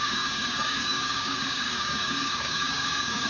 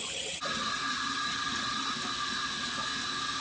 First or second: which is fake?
first